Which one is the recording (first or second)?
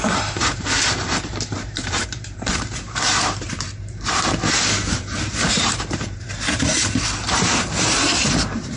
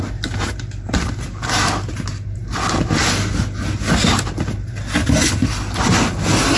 second